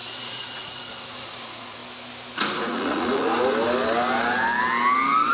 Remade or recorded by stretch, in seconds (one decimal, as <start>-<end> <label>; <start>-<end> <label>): 0.0-1.8 remade; 1.8-2.6 recorded; 2.6-3.3 remade; 3.3-5.3 recorded